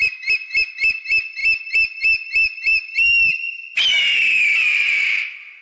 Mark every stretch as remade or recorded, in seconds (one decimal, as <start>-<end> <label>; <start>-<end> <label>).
0.0-5.6 remade